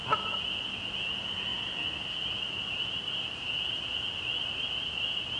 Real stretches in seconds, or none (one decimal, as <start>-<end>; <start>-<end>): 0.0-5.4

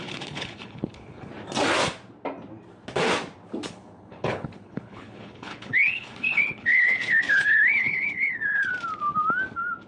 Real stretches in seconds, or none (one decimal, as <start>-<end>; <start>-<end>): 1.3-3.7; 8.7-9.9

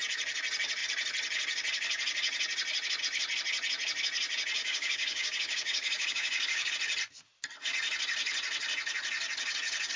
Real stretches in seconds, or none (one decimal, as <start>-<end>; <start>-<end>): 0.0-4.6; 6.7-10.0